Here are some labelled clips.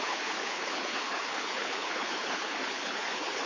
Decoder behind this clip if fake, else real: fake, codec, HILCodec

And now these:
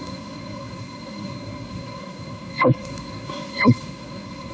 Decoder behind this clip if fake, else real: fake, codec, SNAC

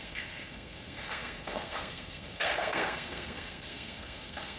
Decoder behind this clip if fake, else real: fake, codec, SNAC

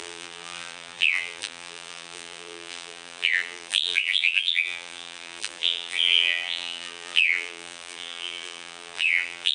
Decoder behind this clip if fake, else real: fake, vocoder, BigVGAN v2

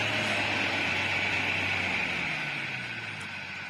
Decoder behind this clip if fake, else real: real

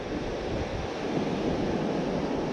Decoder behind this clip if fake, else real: real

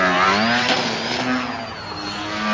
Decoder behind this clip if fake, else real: real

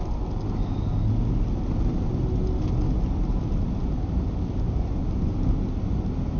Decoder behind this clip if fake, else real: real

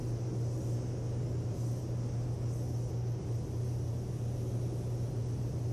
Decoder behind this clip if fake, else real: real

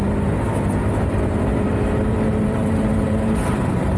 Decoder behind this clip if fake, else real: fake, vocoder, BigVGAN v2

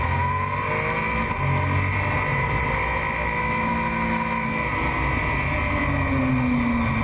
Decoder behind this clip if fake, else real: real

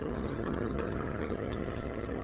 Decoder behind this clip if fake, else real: fake, vocoder, HiFi-GAN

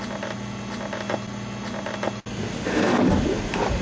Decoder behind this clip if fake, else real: real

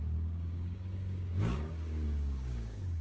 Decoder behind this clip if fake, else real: fake, codec, DAC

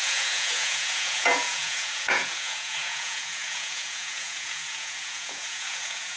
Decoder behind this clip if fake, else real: fake, vocoder, Vocos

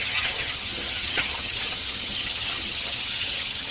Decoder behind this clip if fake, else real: fake, vocoder, HiFi-GAN